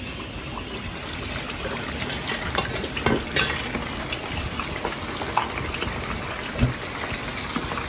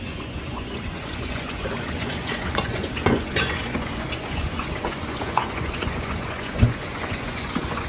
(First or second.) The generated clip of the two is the second